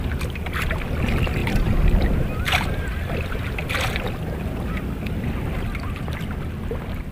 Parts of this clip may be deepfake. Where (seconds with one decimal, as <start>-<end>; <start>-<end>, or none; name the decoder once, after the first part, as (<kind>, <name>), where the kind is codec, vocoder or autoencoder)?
1.4-4.1 (vocoder, BigVGAN v2)